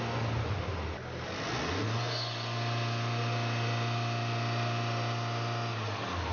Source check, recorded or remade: recorded